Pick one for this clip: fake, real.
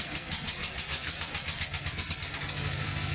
fake